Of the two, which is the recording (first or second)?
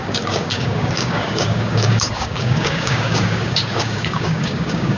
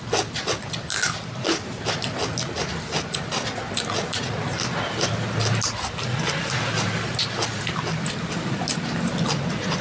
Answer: second